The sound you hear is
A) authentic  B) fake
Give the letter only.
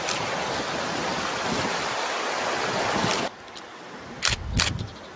A